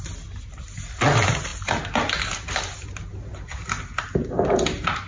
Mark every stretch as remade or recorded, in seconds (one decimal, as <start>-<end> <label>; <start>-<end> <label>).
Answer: 0.0-5.1 recorded